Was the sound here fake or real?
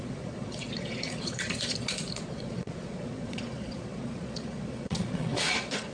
fake